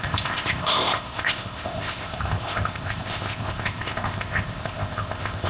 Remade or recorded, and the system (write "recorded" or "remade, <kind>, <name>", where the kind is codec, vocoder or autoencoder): remade, codec, ZipCodec